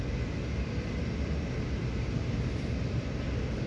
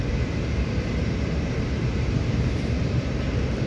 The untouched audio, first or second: first